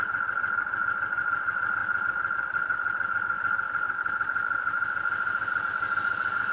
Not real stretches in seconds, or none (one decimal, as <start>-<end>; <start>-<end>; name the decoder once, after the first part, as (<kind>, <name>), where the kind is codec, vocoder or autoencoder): none